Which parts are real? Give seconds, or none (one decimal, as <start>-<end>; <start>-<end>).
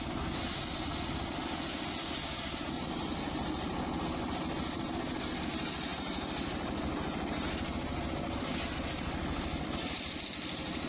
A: 0.0-10.9